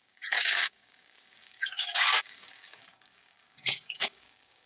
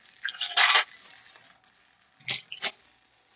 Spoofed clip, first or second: first